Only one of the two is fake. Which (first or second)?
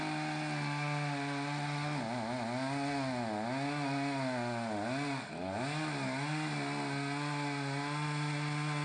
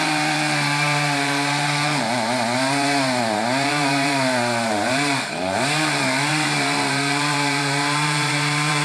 second